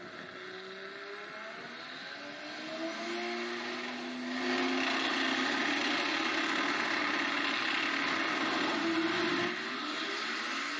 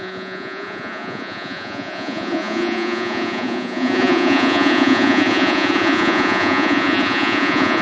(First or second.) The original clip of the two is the first